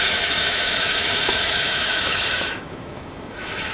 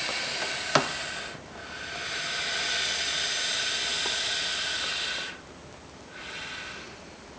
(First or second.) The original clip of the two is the second